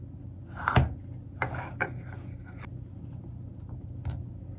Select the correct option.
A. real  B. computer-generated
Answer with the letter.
A